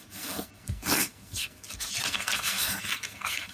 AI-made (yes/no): yes